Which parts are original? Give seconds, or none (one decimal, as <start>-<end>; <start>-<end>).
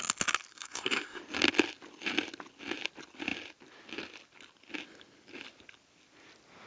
0.0-0.5; 1.2-6.7